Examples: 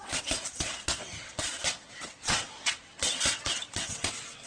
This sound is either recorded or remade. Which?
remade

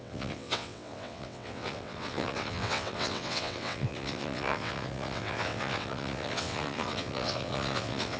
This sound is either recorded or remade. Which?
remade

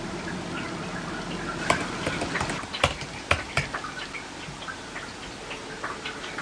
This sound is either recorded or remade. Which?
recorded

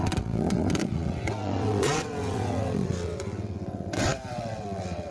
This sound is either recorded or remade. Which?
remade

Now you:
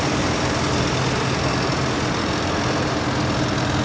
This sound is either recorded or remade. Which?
recorded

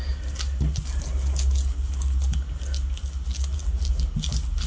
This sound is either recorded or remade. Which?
recorded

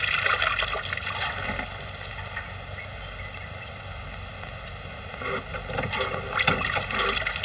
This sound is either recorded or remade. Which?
recorded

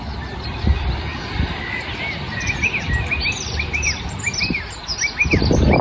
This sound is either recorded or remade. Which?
recorded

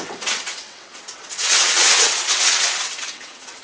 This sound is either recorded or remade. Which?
remade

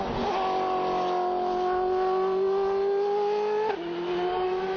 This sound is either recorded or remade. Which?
recorded